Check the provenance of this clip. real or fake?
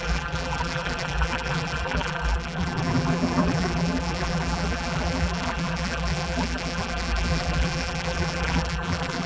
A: fake